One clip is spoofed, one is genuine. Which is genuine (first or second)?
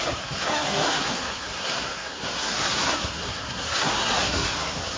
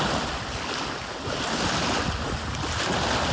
second